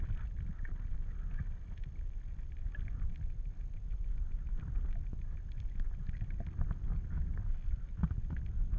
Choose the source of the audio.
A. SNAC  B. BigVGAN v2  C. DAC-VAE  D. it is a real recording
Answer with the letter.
D